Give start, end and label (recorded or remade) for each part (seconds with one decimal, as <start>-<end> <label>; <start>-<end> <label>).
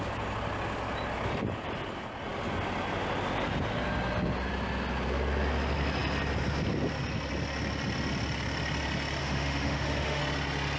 0.0-9.2 recorded; 9.2-10.2 remade; 10.2-10.8 recorded